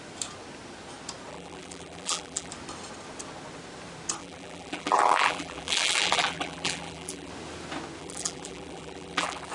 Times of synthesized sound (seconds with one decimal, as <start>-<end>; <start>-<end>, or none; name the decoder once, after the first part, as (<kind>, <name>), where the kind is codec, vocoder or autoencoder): 1.3-2.5 (vocoder, BigVGAN v2); 4.2-7.3; 8.0-9.5